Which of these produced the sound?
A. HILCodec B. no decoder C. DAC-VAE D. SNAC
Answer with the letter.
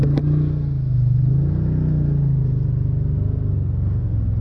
B